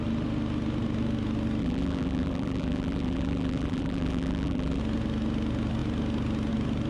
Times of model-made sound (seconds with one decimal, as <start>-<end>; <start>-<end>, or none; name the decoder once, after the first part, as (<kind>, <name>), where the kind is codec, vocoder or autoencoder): 1.6-4.8 (vocoder, BigVGAN v2)